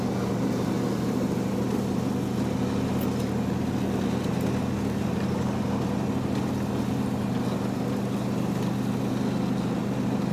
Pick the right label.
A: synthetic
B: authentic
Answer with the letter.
B